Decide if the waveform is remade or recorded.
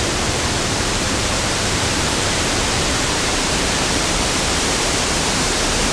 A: remade